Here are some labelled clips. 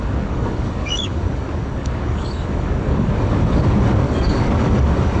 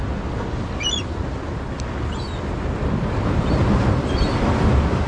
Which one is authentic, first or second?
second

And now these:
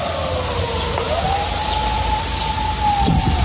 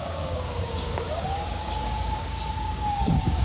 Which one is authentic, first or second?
first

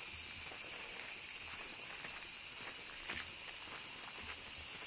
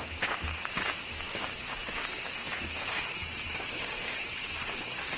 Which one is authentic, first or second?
first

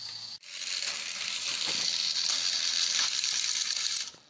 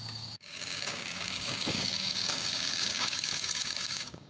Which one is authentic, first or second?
first